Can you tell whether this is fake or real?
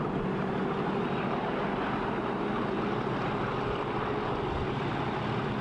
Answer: real